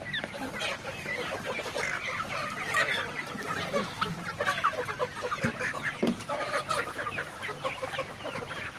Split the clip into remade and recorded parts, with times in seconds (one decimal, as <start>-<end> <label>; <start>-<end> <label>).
0.0-2.9 remade; 2.9-6.2 recorded; 6.2-8.8 remade